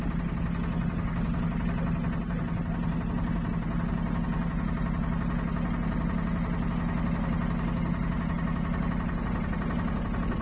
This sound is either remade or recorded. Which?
recorded